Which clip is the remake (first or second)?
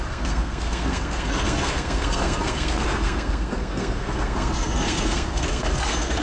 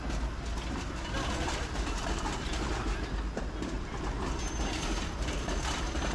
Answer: first